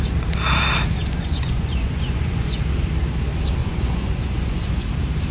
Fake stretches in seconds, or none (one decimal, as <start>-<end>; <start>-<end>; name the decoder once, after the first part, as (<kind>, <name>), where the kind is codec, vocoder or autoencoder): 1.0-2.6 (vocoder, Vocos); 3.6-4.8